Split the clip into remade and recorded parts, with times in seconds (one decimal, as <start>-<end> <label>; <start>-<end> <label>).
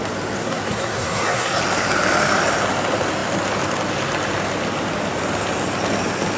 0.0-0.4 recorded; 0.4-1.6 remade; 1.6-6.4 recorded